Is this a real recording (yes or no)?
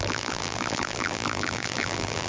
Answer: no